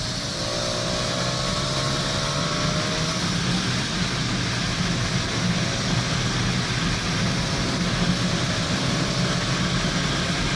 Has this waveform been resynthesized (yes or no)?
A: no